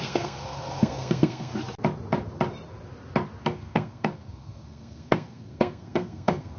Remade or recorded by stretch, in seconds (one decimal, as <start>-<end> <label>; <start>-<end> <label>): 0.0-1.5 remade; 1.5-3.4 recorded; 3.4-6.6 remade